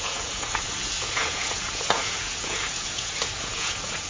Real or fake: fake